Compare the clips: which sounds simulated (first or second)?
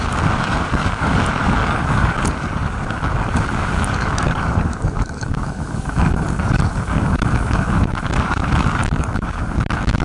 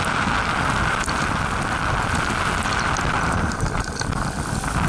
first